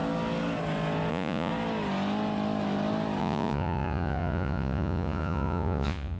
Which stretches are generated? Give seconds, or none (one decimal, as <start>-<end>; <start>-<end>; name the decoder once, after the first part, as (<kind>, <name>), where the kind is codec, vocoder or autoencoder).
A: 1.1-1.5 (vocoder, Vocos); 3.2-6.2